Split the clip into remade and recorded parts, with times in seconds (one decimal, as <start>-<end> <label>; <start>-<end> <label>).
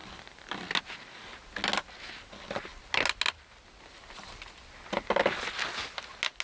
0.0-6.4 recorded